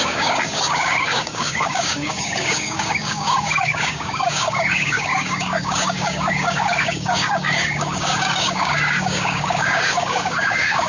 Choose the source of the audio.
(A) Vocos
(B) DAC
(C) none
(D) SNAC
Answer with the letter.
B